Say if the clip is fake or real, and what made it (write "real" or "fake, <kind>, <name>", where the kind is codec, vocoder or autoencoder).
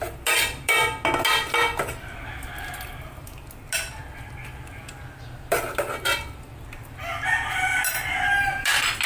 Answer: real